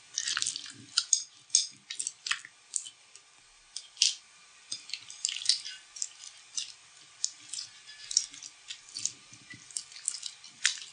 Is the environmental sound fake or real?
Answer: real